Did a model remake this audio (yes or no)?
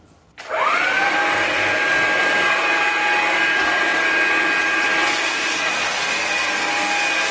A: no